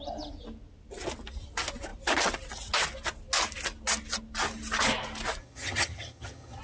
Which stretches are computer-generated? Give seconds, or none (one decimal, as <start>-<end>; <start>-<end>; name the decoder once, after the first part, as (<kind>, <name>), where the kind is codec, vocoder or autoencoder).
5.4-6.6 (vocoder, HiFi-GAN)